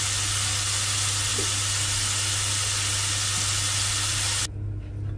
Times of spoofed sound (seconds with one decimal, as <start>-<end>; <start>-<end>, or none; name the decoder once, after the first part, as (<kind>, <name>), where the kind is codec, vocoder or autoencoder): none